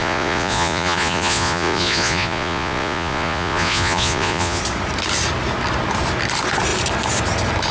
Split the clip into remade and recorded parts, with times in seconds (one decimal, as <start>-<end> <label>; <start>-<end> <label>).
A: 0.0-4.6 remade; 4.6-7.7 recorded